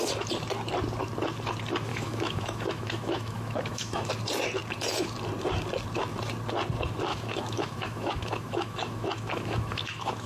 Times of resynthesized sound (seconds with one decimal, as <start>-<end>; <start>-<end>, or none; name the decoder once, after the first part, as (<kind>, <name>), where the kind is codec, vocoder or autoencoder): 1.9-4.1 (autoencoder, DAC-VAE); 7.1-10.3